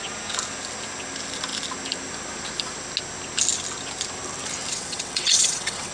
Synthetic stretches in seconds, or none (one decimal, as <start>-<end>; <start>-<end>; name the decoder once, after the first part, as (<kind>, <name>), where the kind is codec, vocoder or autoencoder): 4.7-5.9 (vocoder, WaveNeXt)